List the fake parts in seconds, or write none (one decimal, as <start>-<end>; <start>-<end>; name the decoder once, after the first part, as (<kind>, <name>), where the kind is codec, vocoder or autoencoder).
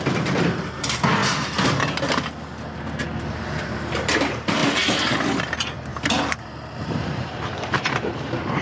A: 0.0-1.2 (vocoder, BigVGAN v2); 3.3-4.6; 5.4-8.6